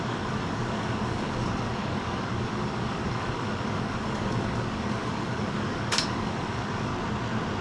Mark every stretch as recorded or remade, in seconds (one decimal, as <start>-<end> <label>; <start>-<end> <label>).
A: 0.0-6.9 remade; 6.9-7.6 recorded